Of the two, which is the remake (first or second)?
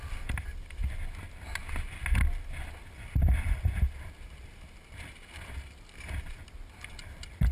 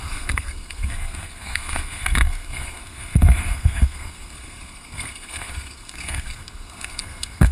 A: second